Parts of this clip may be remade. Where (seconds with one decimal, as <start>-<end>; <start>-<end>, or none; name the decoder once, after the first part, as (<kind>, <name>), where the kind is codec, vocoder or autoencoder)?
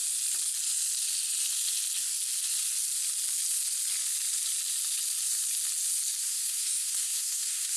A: 6.2-7.8 (codec, SNAC)